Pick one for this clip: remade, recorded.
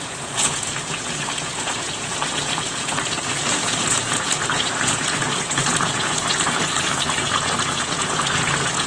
remade